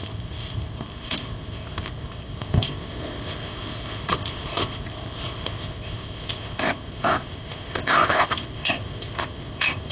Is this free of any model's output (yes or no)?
no